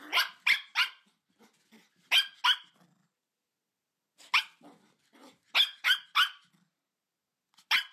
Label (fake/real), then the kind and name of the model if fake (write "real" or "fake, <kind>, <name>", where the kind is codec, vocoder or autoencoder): real